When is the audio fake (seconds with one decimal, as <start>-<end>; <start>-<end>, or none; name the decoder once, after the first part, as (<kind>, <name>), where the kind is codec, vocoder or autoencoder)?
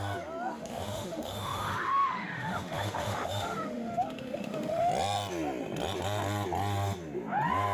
0.5-4.9 (autoencoder, DAC-VAE)